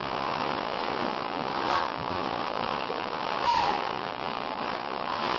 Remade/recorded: remade